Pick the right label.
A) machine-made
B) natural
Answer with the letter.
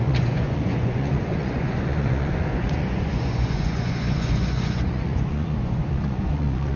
A